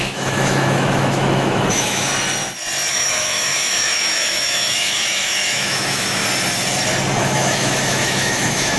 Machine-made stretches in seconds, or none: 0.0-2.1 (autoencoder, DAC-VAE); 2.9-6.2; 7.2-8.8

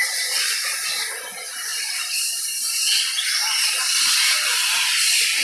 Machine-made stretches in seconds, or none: none

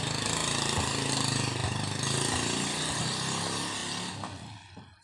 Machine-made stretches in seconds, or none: none

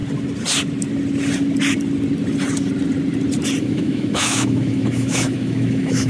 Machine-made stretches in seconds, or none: 3.6-6.1 (autoencoder, DAC-VAE)